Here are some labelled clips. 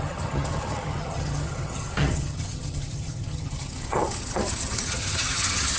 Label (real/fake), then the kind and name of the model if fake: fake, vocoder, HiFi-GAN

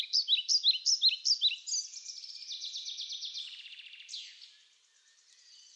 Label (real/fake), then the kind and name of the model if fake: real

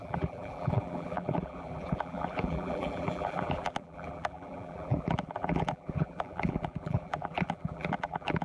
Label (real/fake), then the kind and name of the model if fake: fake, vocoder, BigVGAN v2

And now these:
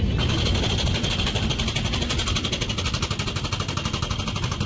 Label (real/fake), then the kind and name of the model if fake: real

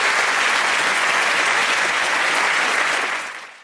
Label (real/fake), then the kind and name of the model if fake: fake, vocoder, Vocos